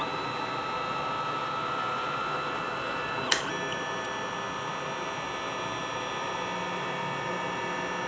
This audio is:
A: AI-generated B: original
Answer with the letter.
B